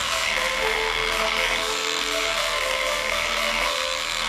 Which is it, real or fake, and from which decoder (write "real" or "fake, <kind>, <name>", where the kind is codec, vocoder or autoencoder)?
fake, codec, SNAC